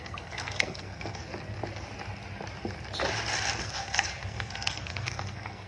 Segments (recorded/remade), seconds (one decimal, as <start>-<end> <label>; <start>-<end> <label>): 0.0-1.2 remade; 1.2-3.6 recorded; 3.6-5.7 remade